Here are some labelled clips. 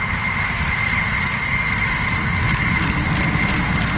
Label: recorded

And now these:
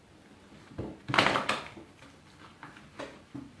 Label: recorded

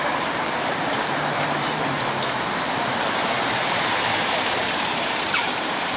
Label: remade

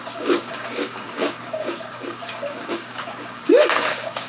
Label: remade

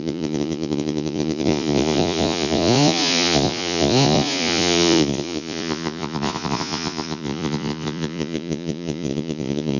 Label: remade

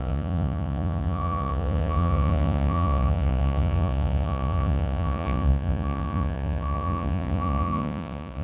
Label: remade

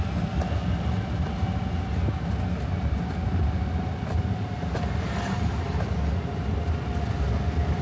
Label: recorded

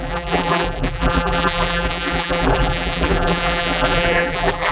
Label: remade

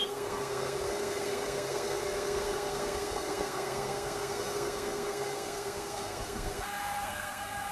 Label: remade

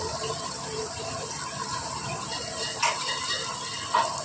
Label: recorded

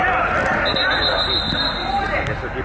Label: recorded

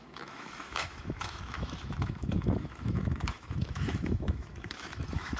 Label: remade